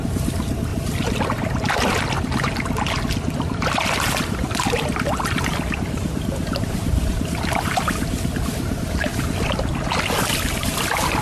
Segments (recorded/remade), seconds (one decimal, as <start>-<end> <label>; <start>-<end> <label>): 0.0-9.1 recorded; 9.1-9.7 remade; 9.7-11.2 recorded